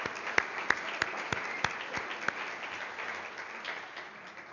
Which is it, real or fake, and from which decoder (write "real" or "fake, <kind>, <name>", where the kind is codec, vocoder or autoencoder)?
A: real